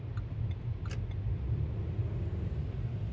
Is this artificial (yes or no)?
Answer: no